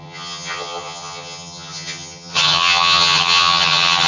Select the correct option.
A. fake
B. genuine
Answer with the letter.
A